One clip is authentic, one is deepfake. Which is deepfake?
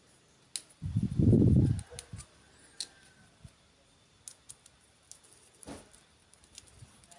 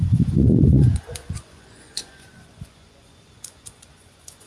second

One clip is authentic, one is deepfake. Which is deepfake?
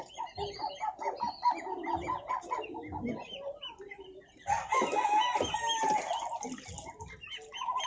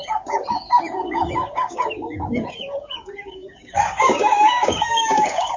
second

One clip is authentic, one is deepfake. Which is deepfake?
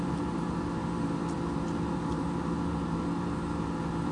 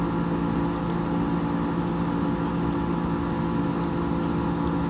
first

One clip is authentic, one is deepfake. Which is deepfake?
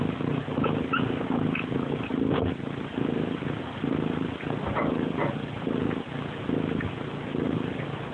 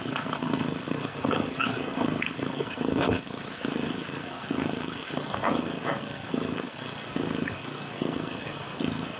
second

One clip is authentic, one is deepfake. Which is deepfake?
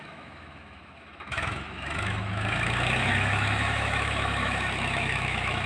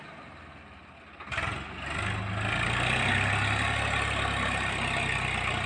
first